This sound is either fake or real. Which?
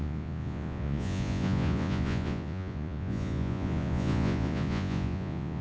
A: fake